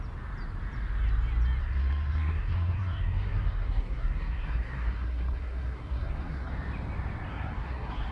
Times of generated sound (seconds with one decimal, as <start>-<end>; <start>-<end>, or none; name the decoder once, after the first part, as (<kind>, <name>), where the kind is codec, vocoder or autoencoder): 1.6-6.5 (codec, SNAC); 7.3-8.1

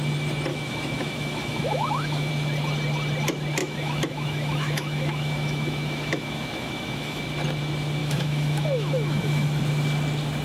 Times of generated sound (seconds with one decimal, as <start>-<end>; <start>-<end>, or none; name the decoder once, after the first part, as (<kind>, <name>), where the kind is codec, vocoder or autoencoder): 0.5-2.3 (autoencoder, DAC-VAE); 3.6-7.2; 8.0-9.6